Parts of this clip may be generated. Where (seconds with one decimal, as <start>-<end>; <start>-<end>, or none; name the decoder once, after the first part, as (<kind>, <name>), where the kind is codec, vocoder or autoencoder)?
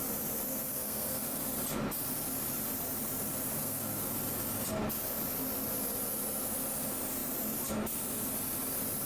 0.5-1.4 (codec, SNAC); 3.6-4.1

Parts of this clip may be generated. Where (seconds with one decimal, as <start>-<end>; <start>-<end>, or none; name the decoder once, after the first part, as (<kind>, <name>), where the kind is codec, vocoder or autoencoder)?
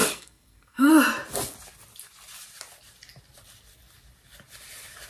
0.0-0.9 (codec, SNAC)